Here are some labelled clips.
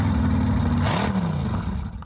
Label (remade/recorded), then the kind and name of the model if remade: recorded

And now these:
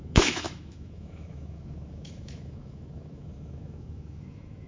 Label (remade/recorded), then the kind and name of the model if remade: remade, autoencoder, DAC-VAE